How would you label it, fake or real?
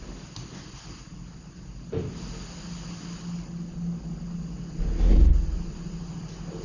real